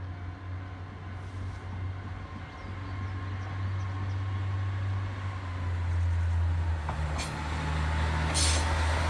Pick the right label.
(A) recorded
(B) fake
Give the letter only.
A